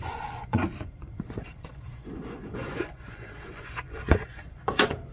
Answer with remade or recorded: remade